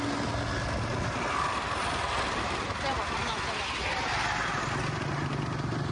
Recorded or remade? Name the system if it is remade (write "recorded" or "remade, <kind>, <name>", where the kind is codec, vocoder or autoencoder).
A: recorded